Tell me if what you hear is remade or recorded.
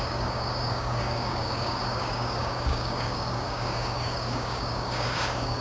remade